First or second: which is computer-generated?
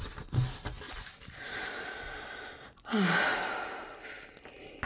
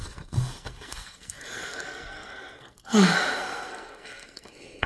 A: second